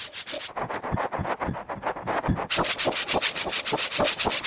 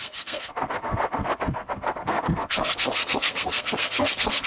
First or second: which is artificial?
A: second